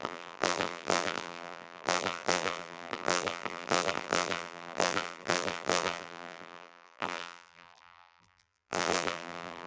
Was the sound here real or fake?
fake